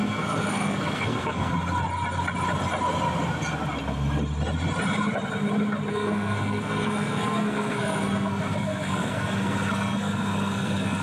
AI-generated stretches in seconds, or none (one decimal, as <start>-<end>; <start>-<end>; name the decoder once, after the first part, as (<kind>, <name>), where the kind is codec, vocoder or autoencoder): 0.0-1.5 (codec, SNAC); 5.9-11.0